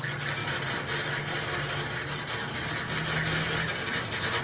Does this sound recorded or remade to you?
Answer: recorded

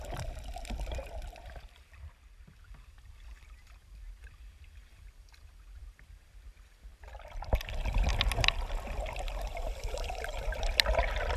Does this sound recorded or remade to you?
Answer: remade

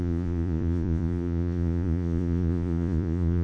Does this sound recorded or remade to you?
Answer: remade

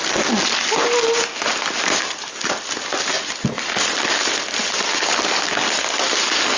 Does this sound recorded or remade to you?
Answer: recorded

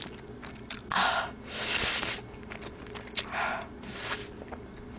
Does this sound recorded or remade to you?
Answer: recorded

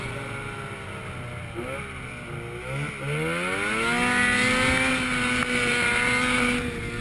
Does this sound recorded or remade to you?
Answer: recorded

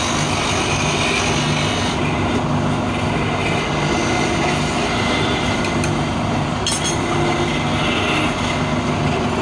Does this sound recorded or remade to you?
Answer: recorded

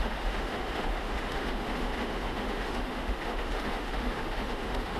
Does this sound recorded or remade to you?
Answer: remade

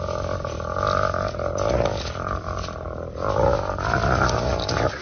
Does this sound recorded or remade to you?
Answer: recorded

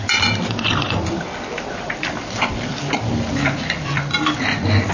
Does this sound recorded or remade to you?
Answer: recorded